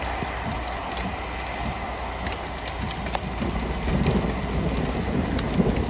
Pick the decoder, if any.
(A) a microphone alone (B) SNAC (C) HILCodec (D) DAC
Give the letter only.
A